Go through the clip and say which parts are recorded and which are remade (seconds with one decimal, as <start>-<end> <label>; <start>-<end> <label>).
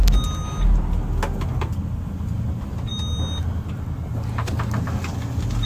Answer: 0.0-5.7 recorded